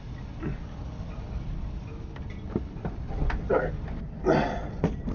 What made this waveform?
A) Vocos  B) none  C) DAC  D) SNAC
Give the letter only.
B